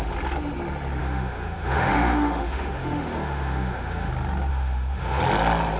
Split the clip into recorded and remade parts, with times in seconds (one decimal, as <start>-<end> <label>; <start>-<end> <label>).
0.0-1.0 recorded; 1.0-4.1 remade; 4.1-4.5 recorded; 4.5-5.2 remade; 5.2-5.8 recorded